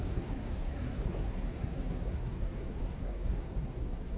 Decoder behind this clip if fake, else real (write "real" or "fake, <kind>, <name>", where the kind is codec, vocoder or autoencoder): fake, codec, SNAC